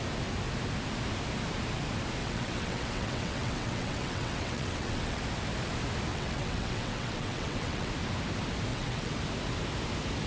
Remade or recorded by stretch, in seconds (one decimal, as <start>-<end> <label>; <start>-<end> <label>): 0.0-2.2 recorded; 2.2-5.2 remade; 5.2-6.1 recorded; 6.1-7.9 remade; 7.9-8.7 recorded; 8.7-9.2 remade; 9.2-10.3 recorded